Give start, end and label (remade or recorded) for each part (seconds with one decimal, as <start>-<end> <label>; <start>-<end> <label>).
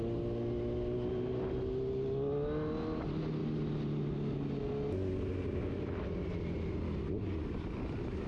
0.0-8.3 recorded